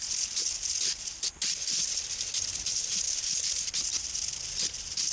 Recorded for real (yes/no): yes